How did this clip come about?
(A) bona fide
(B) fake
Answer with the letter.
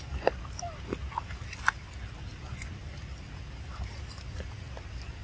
A